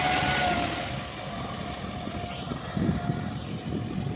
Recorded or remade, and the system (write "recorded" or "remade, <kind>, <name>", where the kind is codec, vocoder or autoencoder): recorded